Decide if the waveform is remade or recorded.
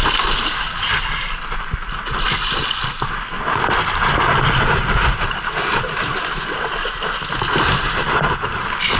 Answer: recorded